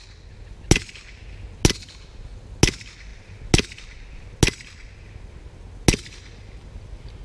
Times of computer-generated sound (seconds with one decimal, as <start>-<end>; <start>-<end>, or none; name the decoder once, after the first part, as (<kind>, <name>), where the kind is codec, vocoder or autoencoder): none